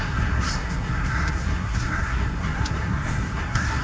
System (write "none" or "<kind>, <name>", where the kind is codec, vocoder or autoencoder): codec, SNAC